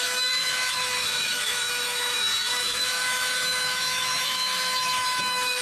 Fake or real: fake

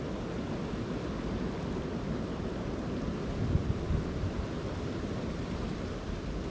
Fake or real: real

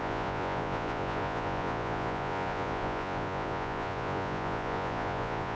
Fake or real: fake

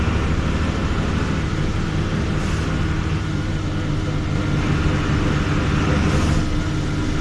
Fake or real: real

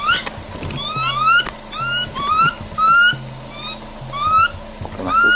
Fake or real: real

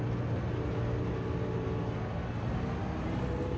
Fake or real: real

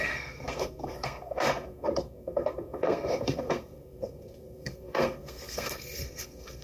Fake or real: fake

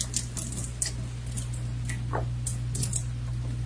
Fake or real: real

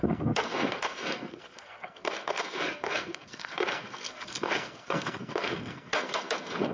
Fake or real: fake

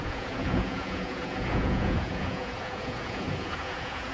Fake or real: fake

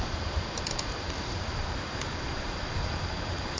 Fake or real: fake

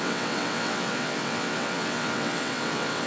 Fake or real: fake